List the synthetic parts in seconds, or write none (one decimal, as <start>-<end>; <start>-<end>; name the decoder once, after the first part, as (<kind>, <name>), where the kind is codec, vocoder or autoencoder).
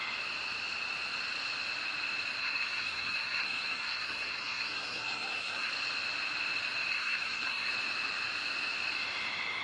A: 2.4-5.7 (codec, SNAC); 6.9-7.7